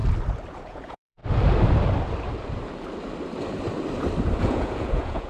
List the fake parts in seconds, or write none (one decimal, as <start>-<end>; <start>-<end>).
0.5-1.2; 4.4-5.3